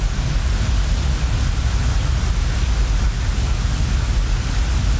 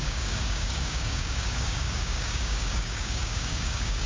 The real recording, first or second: first